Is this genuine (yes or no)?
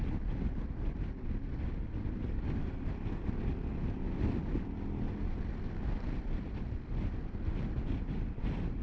yes